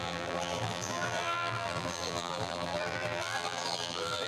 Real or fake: fake